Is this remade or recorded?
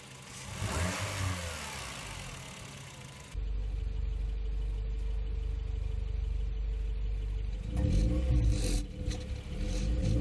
recorded